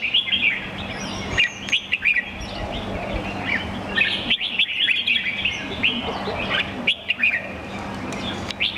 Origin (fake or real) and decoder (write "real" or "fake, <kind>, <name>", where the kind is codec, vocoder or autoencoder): real